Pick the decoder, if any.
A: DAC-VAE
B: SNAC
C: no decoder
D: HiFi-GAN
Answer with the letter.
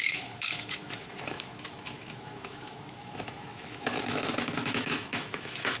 A